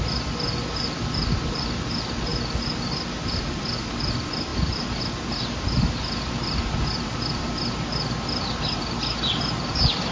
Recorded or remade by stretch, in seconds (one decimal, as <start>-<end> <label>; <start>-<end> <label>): 0.0-10.1 recorded